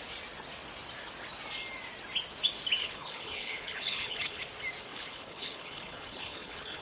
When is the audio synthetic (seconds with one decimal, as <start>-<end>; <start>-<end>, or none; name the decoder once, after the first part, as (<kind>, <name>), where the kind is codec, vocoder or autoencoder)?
2.8-4.4 (codec, HILCodec); 4.9-6.8